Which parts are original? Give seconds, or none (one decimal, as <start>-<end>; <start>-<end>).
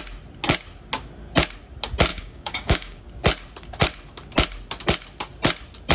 0.0-2.1; 3.0-5.9